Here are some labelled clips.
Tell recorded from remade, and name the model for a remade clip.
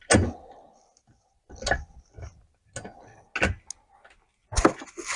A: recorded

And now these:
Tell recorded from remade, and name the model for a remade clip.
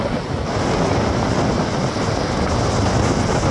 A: recorded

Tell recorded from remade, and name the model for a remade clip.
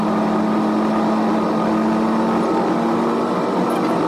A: recorded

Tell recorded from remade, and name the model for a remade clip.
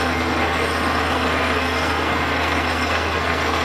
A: remade, codec, SNAC